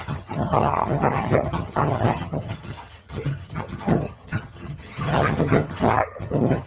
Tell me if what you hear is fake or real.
fake